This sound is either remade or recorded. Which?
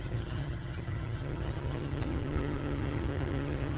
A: remade